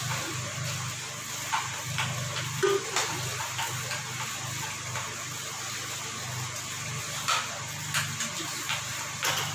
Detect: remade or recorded recorded